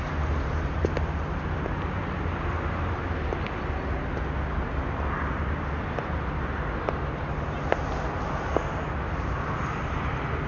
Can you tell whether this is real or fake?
real